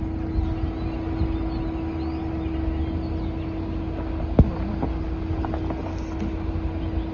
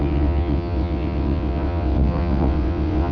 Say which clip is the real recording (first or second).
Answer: first